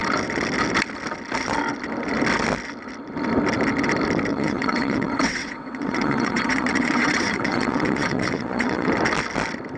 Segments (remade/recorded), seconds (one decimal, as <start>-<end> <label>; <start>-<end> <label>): 0.0-4.3 recorded; 4.3-8.9 remade; 8.9-9.8 recorded